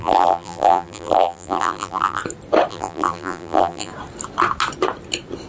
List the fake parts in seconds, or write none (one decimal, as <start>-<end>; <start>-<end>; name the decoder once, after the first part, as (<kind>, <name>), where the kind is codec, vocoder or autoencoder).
0.0-2.2 (vocoder, BigVGAN v2); 2.7-3.9